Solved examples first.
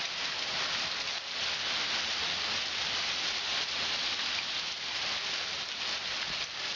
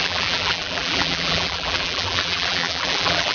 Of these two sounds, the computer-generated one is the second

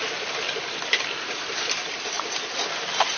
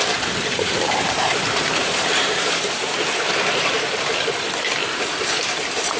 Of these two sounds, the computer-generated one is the second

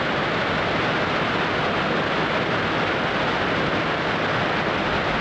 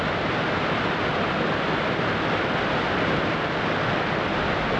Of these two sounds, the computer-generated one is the second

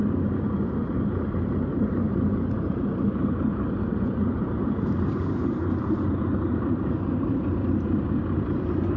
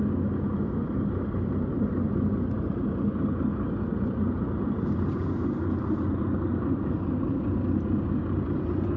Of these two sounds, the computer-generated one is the first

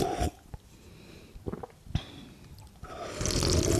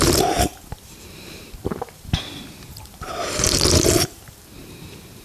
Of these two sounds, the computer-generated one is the second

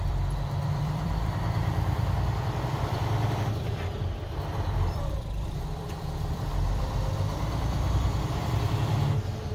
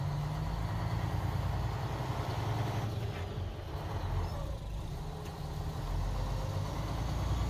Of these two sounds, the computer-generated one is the first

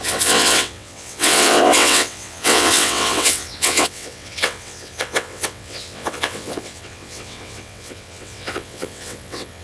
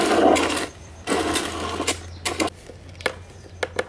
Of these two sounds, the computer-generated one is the first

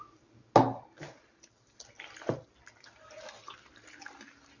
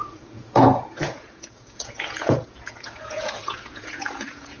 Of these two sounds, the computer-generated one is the second